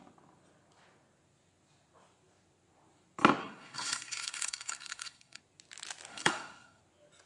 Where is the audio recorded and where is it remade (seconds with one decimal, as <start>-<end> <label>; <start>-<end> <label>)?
0.0-3.4 recorded; 3.4-5.4 remade; 5.4-6.1 recorded; 6.1-6.8 remade; 6.8-7.3 recorded